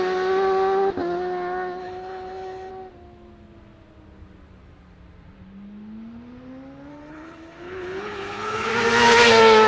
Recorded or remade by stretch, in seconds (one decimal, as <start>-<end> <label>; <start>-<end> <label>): 0.0-1.8 recorded; 1.8-2.7 remade; 2.7-6.9 recorded; 6.9-8.7 remade; 8.7-9.7 recorded